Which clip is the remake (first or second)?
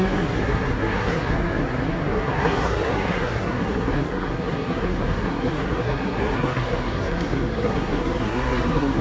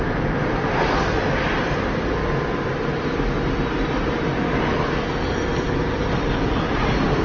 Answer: first